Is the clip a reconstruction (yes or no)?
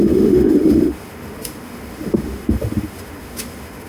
yes